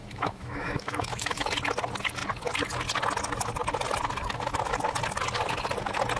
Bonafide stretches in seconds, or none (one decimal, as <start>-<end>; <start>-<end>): 1.5-6.2